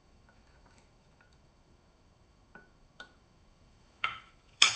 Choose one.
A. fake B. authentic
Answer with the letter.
A